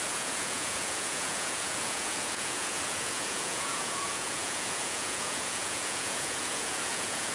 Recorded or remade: remade